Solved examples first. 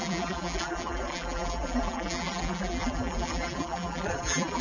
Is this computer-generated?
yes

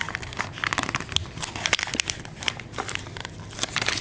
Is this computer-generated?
no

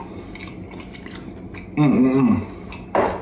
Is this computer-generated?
no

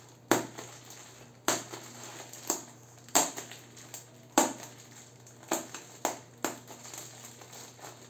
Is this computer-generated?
no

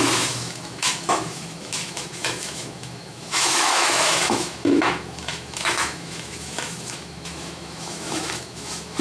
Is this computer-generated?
yes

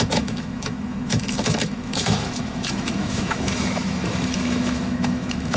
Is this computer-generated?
yes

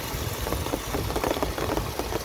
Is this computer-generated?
no